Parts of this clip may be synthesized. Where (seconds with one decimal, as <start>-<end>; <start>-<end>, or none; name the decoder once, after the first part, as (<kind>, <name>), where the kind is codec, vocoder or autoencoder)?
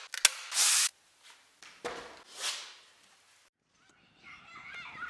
none